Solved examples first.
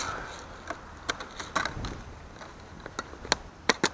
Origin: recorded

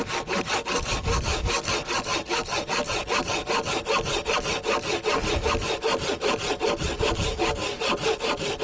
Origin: recorded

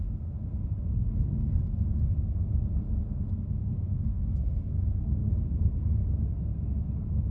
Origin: remade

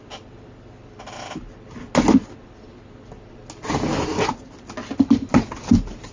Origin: recorded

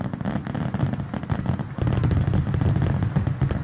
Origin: recorded